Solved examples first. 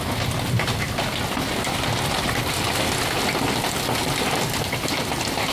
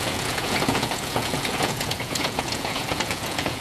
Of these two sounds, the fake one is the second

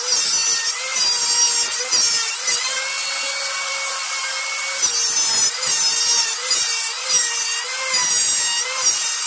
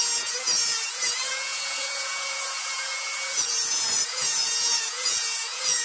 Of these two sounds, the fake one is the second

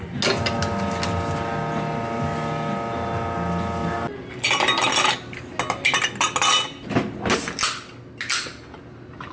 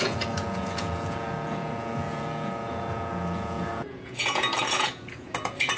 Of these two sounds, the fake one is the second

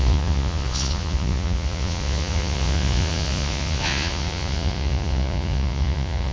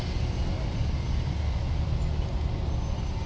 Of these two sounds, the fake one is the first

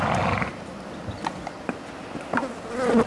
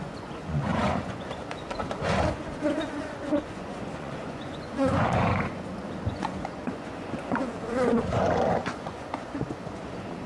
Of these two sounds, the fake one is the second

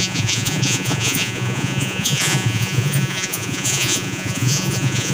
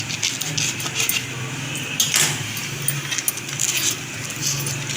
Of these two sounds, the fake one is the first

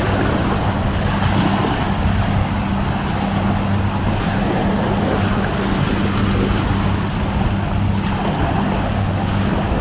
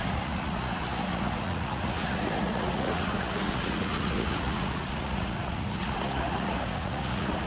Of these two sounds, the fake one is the second